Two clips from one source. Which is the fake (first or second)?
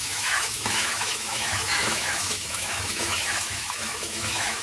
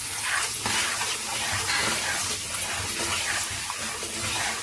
first